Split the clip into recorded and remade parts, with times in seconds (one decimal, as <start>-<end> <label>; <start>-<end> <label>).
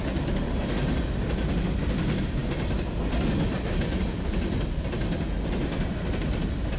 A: 0.0-6.8 recorded